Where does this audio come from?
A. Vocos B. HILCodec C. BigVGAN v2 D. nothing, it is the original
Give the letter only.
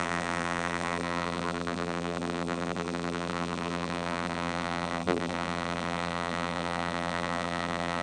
C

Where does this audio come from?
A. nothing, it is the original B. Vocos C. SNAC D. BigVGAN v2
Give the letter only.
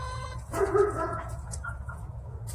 B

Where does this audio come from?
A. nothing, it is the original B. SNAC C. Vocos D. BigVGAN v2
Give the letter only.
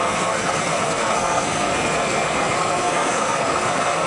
B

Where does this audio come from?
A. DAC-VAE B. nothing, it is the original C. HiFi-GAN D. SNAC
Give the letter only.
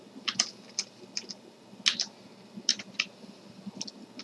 B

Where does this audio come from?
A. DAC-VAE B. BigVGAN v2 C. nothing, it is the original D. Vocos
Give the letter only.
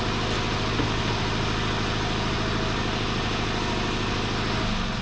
C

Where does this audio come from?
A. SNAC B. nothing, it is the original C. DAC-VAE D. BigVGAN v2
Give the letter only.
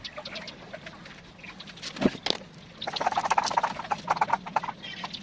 B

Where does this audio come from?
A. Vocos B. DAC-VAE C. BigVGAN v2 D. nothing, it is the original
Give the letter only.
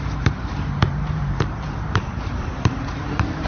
C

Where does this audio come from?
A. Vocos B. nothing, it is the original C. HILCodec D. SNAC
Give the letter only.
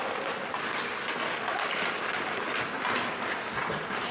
B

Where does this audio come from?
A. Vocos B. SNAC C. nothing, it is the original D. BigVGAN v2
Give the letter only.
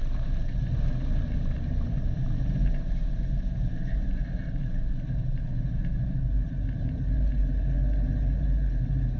D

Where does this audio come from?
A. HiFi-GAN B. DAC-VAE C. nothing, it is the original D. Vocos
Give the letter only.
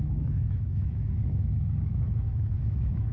B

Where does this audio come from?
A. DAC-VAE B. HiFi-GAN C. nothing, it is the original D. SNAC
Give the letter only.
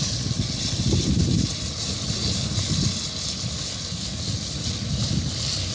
C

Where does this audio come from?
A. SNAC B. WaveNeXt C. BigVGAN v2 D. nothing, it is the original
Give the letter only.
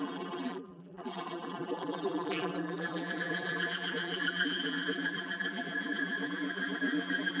C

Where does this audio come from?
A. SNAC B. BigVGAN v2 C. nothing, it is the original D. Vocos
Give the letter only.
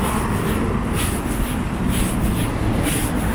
C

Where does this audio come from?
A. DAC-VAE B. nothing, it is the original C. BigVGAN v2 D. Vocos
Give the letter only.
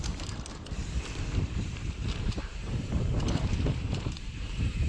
C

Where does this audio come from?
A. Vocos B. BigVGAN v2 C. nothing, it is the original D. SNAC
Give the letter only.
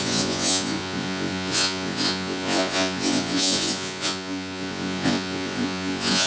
A